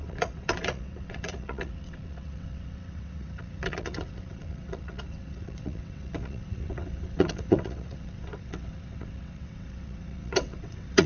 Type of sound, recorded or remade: remade